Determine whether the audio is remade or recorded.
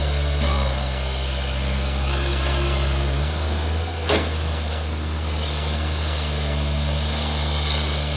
remade